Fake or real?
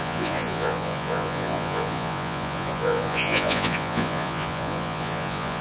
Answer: fake